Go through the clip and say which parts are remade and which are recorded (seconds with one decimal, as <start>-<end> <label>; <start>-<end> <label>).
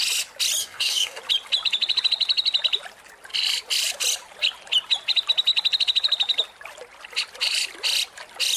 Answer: 0.0-0.6 recorded; 0.6-1.2 remade; 1.2-8.6 recorded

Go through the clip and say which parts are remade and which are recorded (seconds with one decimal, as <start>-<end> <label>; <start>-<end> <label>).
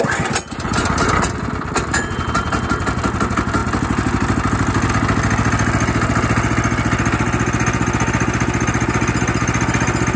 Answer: 0.0-10.2 recorded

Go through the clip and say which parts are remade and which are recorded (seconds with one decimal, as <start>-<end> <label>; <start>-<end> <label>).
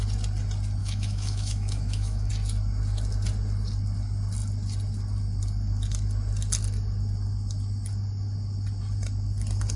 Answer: 0.0-0.8 recorded; 0.8-2.3 remade; 2.3-9.8 recorded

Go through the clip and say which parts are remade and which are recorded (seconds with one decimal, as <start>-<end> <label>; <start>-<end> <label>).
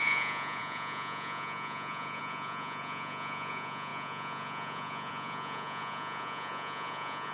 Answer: 0.0-7.3 remade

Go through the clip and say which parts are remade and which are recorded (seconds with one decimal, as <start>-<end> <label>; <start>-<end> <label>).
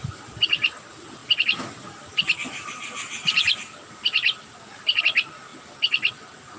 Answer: 0.0-6.6 recorded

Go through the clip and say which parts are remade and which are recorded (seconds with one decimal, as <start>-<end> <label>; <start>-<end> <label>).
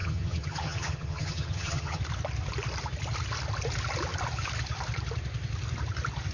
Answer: 0.0-2.0 remade; 2.0-6.3 recorded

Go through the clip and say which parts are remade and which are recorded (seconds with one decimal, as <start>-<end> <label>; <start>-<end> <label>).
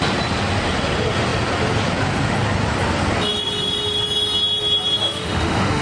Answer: 0.0-5.0 recorded; 5.0-5.8 remade